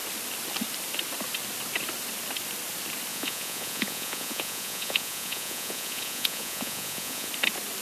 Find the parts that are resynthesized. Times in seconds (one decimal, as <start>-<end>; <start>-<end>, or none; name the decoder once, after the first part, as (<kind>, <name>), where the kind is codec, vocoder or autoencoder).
3.1-7.3 (vocoder, Vocos)